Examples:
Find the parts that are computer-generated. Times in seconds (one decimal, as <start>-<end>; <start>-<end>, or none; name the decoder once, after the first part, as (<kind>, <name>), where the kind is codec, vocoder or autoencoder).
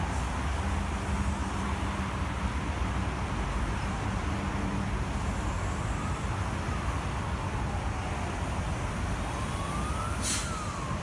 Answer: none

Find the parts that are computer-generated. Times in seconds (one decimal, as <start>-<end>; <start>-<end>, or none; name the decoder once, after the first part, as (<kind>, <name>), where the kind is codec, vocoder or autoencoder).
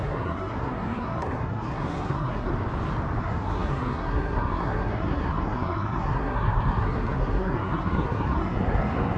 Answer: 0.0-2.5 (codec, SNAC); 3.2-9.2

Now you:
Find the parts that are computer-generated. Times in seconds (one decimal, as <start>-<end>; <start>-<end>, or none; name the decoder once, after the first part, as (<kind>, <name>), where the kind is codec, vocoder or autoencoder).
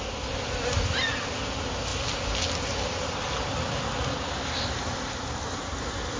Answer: none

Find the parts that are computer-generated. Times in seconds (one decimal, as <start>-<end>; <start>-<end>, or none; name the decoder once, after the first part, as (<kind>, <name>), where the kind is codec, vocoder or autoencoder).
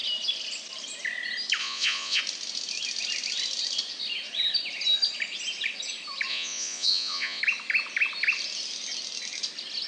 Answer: 1.6-2.2 (vocoder, Vocos); 6.3-7.4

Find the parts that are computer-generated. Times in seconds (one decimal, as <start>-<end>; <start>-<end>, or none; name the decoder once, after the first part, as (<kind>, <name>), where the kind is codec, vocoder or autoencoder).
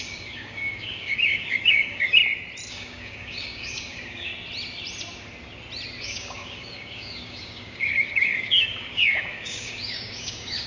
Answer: 0.0-2.2 (codec, DAC); 2.7-4.3; 6.0-10.7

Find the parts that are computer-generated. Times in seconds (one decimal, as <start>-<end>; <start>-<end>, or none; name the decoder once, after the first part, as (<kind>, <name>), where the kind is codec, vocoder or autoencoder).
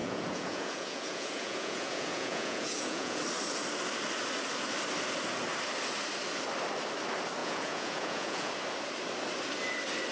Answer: 0.0-3.2 (vocoder, Vocos); 7.4-8.5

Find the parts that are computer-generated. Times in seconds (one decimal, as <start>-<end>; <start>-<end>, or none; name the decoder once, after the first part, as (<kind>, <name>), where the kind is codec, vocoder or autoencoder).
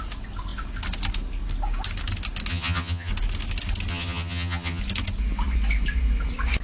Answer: 2.5-3.1 (vocoder, HiFi-GAN); 3.9-4.8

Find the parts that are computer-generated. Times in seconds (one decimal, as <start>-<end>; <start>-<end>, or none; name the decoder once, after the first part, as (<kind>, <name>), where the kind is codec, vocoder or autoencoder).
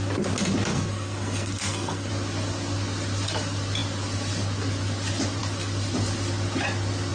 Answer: 0.7-2.1 (codec, SNAC)